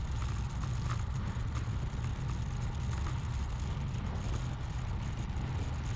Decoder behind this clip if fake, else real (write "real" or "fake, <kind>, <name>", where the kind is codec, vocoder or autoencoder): real